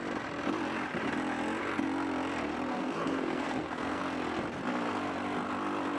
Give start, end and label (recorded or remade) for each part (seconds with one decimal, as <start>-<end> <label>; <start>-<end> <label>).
0.0-2.7 recorded; 2.7-4.0 remade; 4.0-6.0 recorded